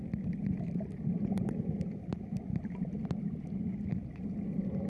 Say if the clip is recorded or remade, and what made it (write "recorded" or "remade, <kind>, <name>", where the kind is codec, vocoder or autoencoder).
recorded